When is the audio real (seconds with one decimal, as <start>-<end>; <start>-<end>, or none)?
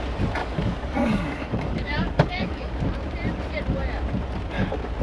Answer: 0.0-0.4; 2.7-5.0